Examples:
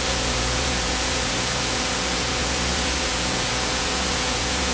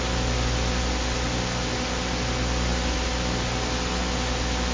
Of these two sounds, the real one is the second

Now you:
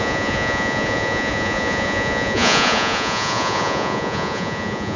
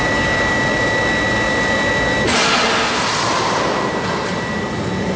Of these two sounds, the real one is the second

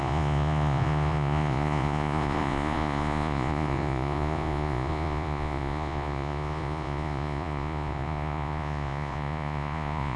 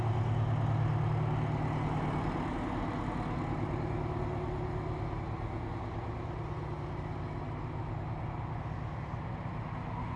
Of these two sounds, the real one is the second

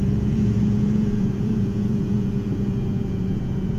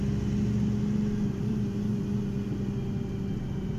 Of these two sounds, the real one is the second